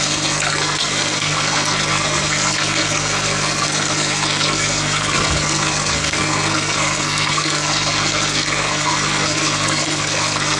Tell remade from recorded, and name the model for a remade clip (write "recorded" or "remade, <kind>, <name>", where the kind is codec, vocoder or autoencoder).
remade, codec, SNAC